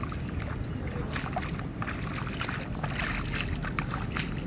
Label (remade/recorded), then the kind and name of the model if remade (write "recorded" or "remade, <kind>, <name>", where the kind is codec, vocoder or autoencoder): recorded